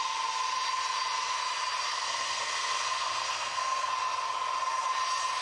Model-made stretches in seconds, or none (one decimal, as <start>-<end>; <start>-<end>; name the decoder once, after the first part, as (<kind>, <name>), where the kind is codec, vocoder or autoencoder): 1.9-3.9 (codec, SNAC)